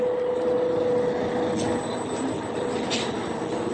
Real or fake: real